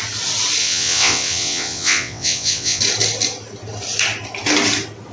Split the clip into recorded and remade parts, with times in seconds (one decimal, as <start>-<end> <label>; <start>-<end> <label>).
0.0-0.6 recorded; 0.6-2.8 remade; 2.8-5.1 recorded